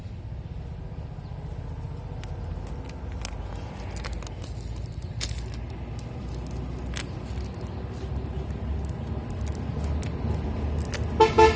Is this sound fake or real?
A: real